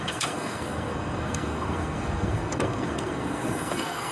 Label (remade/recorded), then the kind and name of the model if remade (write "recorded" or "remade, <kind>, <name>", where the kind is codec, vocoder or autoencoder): remade, codec, SNAC